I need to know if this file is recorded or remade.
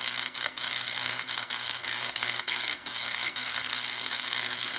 remade